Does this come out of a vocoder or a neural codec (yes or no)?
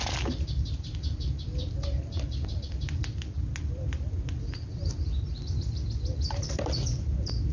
no